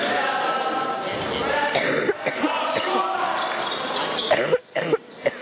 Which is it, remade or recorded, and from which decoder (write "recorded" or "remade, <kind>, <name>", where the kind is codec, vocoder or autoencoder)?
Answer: recorded